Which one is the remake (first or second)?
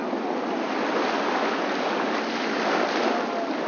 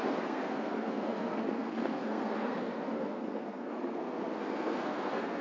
second